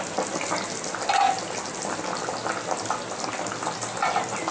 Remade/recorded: recorded